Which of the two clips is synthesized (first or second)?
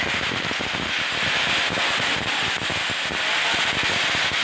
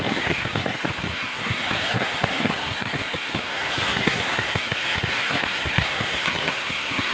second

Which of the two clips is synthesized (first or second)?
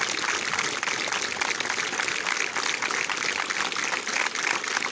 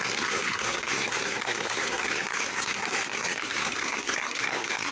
second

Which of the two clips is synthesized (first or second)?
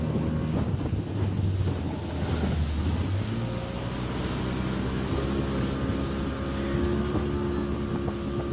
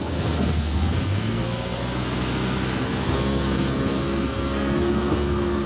second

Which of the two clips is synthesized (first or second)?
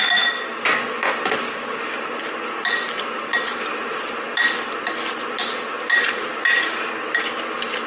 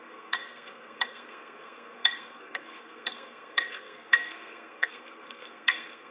second